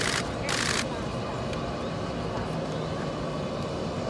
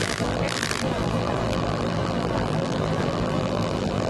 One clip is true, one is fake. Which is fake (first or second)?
second